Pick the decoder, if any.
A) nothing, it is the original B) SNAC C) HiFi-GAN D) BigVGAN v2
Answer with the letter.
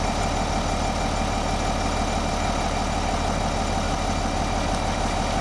A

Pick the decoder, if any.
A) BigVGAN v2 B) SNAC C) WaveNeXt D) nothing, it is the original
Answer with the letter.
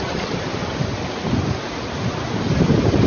D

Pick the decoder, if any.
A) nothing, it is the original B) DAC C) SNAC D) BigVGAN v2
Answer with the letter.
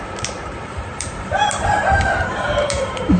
D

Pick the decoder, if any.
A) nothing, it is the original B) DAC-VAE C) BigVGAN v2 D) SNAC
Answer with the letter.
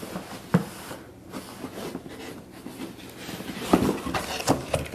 A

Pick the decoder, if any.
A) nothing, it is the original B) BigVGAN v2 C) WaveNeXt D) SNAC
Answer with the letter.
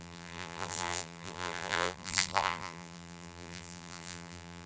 B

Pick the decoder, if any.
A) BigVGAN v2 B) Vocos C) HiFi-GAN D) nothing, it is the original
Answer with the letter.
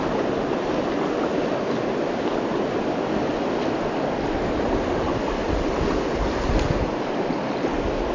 D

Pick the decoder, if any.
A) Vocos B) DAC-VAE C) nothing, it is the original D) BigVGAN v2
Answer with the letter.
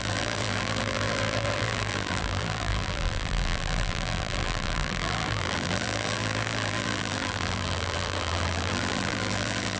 D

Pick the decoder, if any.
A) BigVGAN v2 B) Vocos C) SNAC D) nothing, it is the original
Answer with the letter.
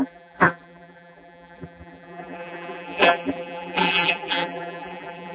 A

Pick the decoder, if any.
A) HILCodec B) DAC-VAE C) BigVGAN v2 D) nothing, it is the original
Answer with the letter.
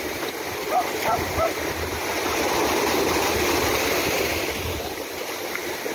D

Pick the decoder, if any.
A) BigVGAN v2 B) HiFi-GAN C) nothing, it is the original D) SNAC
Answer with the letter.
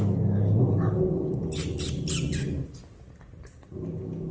C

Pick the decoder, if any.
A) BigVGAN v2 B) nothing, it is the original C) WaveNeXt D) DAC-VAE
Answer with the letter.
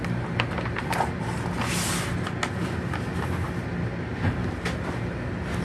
B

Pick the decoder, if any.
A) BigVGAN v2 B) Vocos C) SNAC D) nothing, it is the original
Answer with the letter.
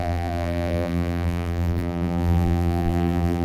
A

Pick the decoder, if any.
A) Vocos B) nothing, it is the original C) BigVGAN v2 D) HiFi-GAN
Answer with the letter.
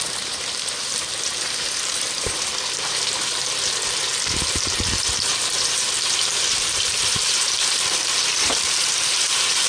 C